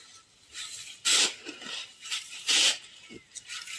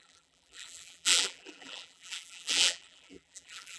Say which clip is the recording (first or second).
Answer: first